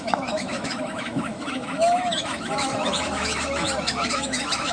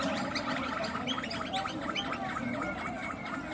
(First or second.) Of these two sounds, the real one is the second